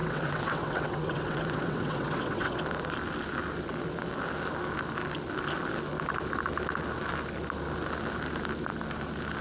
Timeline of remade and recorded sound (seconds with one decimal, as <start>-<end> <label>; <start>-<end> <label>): 0.0-2.6 remade; 2.6-9.4 recorded